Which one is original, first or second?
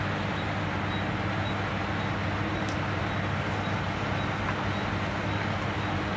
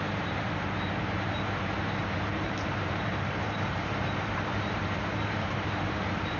first